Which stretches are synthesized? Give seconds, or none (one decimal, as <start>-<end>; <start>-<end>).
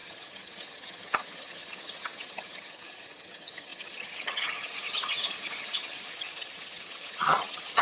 0.0-7.8